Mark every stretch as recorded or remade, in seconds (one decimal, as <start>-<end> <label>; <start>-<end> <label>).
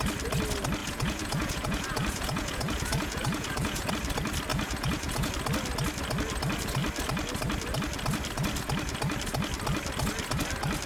0.0-0.8 recorded; 0.8-3.9 remade; 3.9-4.5 recorded; 4.5-5.3 remade; 5.3-10.9 recorded